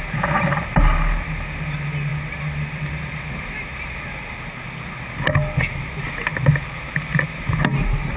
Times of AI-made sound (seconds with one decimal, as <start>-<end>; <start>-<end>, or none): none